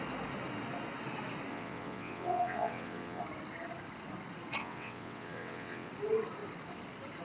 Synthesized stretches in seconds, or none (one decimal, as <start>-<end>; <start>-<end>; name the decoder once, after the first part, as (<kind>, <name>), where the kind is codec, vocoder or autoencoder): 1.5-3.2 (vocoder, WaveNeXt); 4.6-5.9